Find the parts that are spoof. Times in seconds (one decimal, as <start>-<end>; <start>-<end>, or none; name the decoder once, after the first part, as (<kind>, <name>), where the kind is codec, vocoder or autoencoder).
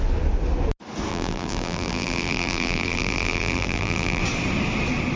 1.1-4.2 (vocoder, BigVGAN v2)